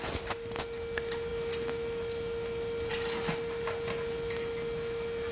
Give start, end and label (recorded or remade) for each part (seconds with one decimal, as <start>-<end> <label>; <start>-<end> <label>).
0.0-5.3 recorded